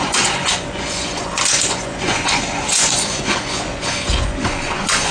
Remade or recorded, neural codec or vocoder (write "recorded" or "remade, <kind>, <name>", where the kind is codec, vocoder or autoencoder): remade, vocoder, Vocos